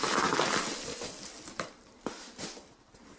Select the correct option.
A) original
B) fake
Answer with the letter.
A